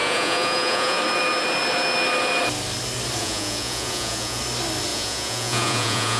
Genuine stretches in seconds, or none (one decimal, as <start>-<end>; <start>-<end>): 1.0-3.2; 4.4-4.9